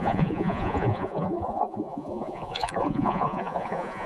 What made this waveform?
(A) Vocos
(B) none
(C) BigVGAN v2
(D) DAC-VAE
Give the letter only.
A